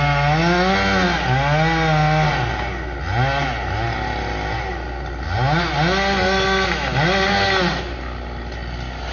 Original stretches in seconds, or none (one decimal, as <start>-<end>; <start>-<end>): 0.0-9.1